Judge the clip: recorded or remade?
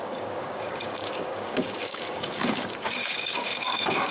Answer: remade